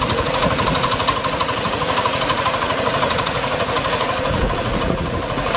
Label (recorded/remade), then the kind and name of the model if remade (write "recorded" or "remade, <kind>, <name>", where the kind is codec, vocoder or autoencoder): remade, vocoder, Vocos